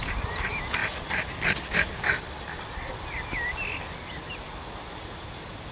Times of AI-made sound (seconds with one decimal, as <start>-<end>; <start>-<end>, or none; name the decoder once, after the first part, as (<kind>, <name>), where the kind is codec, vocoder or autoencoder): none